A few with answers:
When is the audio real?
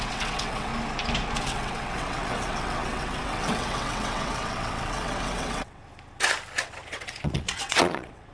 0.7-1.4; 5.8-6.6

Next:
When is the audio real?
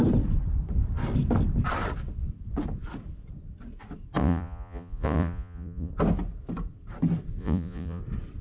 0.0-4.2; 5.9-7.4; 8.0-8.4